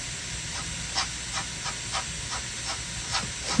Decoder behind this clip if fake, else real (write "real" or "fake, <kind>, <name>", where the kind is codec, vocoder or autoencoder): real